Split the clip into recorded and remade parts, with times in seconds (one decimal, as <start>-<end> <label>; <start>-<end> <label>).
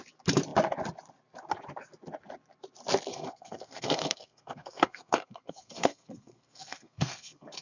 0.0-3.1 recorded; 3.1-7.6 remade